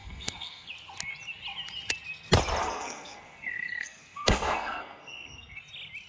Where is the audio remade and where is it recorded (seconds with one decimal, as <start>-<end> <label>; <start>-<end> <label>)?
0.0-0.7 remade; 0.7-2.6 recorded; 2.6-5.6 remade; 5.6-6.1 recorded